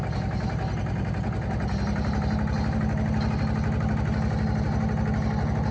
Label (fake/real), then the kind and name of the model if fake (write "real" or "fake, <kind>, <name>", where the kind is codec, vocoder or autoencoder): real